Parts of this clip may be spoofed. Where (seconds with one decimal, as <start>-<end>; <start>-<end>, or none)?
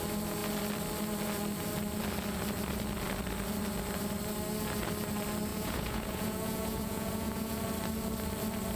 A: 5.5-7.6